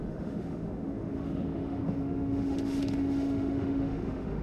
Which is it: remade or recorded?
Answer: remade